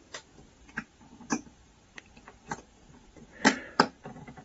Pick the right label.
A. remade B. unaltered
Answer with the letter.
A